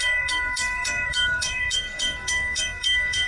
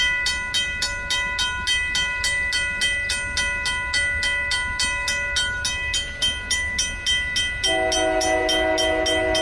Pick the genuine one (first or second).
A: second